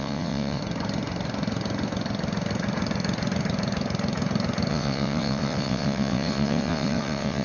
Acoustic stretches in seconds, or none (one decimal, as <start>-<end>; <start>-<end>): 0.6-4.7